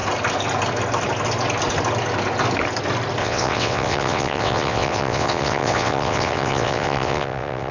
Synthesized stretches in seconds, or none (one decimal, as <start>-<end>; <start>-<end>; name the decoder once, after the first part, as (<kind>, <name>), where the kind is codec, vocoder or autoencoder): 3.2-7.7 (vocoder, WaveNeXt)